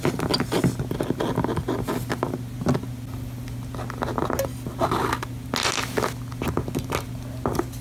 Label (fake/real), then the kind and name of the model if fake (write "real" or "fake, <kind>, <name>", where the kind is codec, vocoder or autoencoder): real